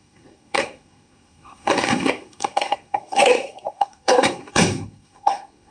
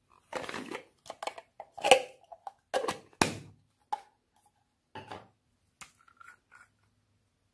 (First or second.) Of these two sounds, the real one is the second